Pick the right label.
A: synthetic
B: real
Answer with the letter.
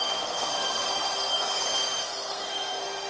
A